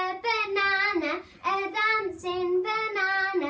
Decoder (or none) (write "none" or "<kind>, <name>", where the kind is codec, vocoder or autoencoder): none